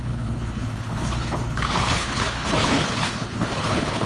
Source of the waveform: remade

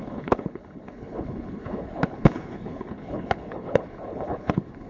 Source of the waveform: remade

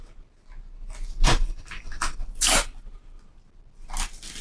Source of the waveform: recorded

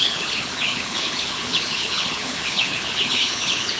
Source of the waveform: remade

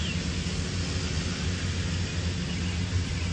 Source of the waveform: recorded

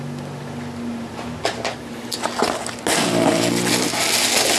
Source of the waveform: recorded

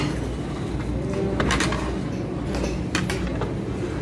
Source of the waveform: recorded